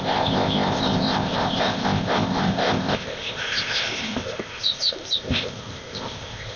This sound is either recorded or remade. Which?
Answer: remade